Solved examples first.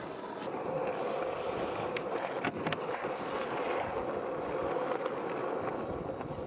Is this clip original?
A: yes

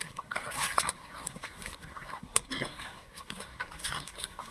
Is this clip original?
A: no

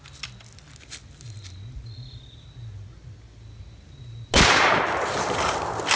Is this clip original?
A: yes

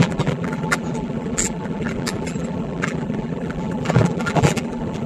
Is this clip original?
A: no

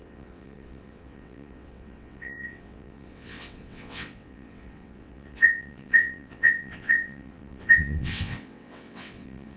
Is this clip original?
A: no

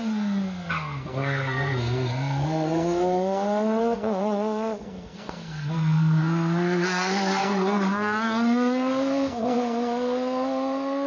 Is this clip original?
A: no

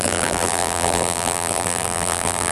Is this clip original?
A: no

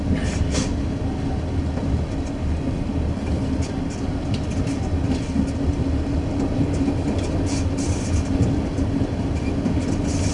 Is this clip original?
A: yes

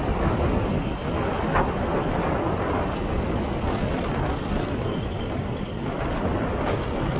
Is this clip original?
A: yes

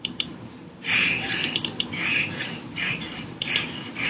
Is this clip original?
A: no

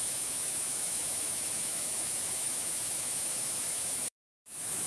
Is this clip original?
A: no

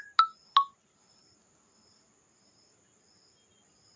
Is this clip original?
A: yes